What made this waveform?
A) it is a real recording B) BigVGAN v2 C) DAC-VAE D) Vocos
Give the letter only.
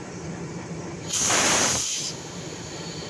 B